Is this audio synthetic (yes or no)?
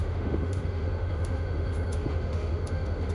yes